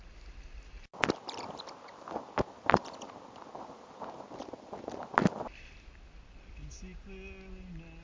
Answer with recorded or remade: recorded